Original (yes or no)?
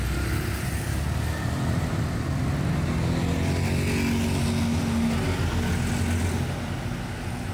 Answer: yes